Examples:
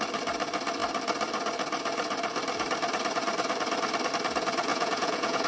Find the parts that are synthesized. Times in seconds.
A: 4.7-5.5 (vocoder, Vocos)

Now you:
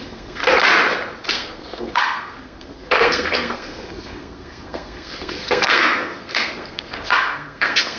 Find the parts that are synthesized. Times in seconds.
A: 0.0-0.4 (codec, SNAC); 1.3-8.0

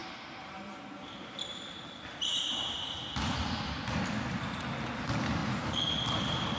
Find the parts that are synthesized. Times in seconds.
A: 0.0-4.0 (vocoder, BigVGAN v2); 5.4-6.6

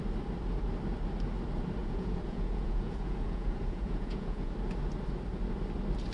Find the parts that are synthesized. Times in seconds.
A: 1.8-4.5 (vocoder, Vocos)